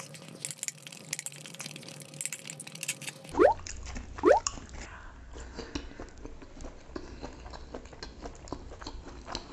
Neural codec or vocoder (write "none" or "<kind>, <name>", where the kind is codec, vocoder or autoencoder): none